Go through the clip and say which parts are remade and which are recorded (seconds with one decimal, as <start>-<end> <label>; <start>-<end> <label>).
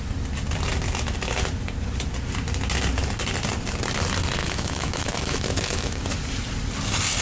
0.0-4.4 recorded; 4.4-6.0 remade; 6.0-7.2 recorded